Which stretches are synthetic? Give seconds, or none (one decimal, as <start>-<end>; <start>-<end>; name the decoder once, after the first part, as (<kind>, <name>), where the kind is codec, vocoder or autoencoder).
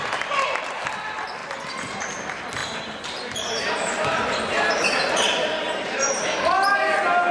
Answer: 2.6-7.3 (vocoder, BigVGAN v2)